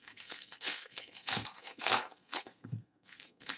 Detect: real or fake fake